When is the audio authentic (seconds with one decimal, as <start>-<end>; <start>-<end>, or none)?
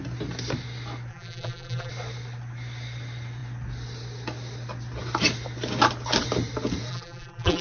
0.0-1.1; 1.9-6.9